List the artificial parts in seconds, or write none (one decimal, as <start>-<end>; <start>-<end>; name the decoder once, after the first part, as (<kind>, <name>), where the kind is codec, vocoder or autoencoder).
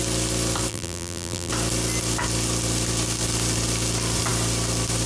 0.7-1.5 (vocoder, BigVGAN v2)